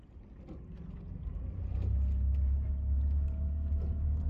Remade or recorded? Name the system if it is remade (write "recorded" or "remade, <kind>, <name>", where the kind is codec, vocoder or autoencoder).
recorded